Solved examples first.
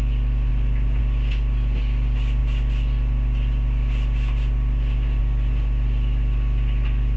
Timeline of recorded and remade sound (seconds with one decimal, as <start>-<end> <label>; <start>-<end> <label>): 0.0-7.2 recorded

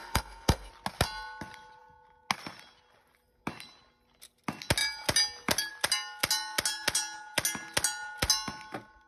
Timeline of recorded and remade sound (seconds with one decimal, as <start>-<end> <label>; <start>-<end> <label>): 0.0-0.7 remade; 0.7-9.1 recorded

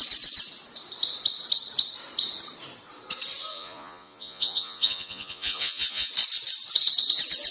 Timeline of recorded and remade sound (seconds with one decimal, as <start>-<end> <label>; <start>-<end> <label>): 0.0-3.5 recorded; 3.5-6.1 remade; 6.1-7.5 recorded

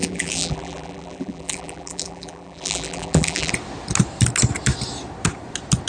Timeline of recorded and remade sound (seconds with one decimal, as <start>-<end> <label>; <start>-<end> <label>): 0.0-3.5 remade; 3.5-5.9 recorded